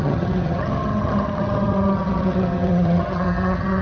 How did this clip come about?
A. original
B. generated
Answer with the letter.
B